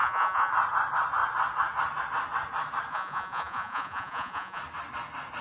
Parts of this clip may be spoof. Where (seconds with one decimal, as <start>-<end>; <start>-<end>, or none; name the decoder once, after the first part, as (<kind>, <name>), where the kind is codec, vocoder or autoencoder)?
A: 0.0-0.5 (vocoder, Vocos); 2.9-4.6